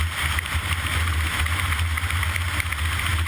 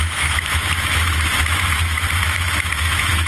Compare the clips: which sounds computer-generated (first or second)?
second